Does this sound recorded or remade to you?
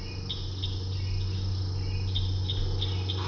recorded